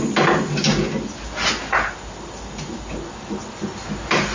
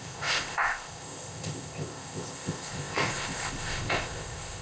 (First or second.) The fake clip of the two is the second